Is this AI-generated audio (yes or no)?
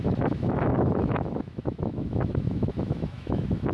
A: yes